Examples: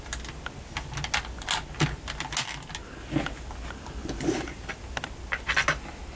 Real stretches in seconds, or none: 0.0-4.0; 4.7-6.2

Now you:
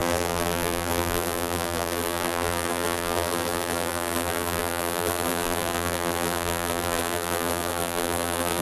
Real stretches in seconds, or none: none

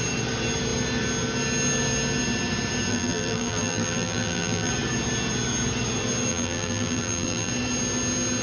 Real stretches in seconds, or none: 0.0-2.9; 4.7-6.3; 7.5-8.4